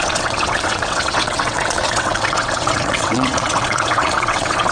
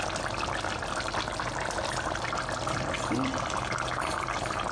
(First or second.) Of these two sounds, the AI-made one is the first